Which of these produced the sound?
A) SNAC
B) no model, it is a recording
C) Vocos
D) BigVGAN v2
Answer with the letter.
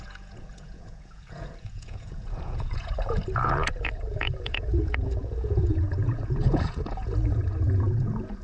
C